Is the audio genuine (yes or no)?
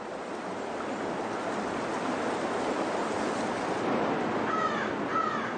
yes